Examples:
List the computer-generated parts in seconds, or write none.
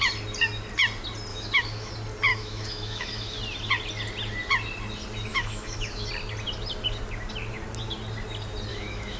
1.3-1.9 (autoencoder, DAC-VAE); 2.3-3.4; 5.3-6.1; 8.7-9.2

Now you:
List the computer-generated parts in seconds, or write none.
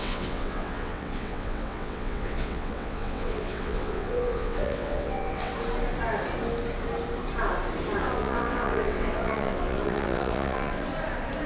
0.0-5.5 (vocoder, WaveNeXt); 8.0-10.9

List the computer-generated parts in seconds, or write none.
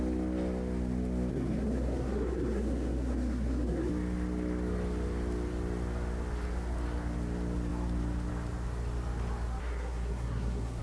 1.3-3.9 (codec, SNAC); 9.6-10.8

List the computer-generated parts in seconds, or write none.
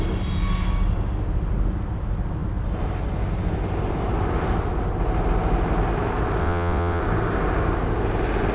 6.4-7.0 (vocoder, WaveNeXt)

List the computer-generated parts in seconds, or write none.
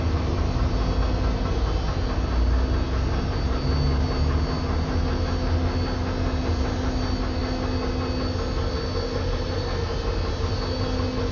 none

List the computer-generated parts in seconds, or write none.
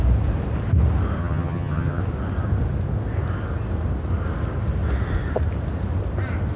1.2-2.0 (vocoder, HiFi-GAN)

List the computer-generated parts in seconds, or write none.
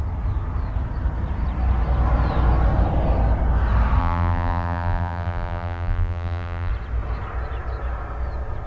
4.0-6.7 (vocoder, BigVGAN v2)